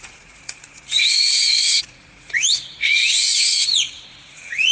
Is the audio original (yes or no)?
no